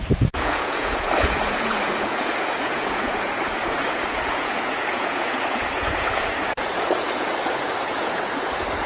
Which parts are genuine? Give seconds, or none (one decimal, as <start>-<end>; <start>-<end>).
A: none